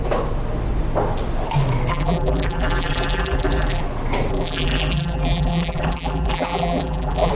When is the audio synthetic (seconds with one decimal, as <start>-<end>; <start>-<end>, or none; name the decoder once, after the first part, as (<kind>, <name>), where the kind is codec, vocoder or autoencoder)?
1.9-3.8 (vocoder, BigVGAN v2); 4.3-7.3